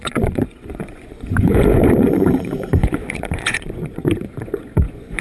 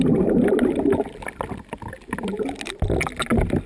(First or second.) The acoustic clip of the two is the second